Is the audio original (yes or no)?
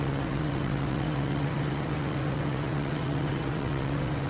no